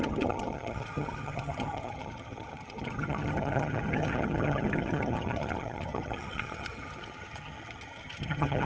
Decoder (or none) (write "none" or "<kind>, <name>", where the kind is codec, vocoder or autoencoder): vocoder, HiFi-GAN